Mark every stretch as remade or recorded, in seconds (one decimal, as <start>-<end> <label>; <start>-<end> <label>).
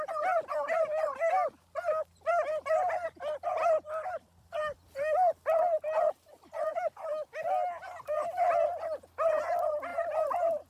0.0-10.7 recorded